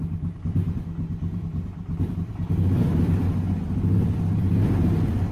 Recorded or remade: remade